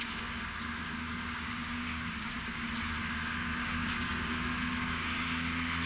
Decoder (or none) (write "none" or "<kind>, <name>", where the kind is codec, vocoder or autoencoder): codec, DAC